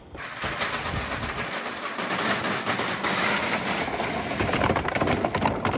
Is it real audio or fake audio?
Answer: fake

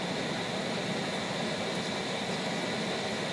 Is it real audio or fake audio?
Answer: real